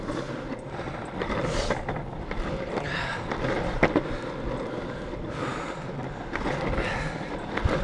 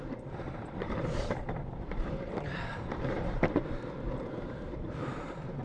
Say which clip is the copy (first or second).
second